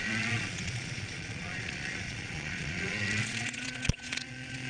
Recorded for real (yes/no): no